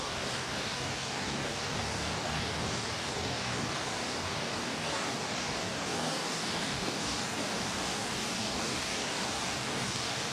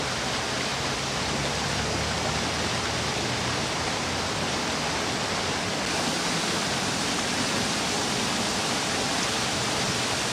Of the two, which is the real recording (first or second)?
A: second